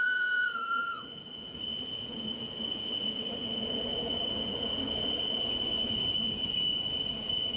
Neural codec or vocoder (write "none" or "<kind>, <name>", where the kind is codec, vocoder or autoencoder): vocoder, Vocos